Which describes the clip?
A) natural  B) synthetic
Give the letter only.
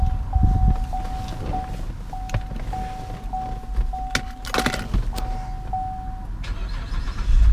A